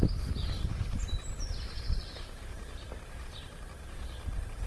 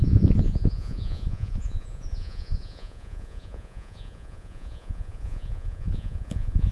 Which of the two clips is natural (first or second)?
first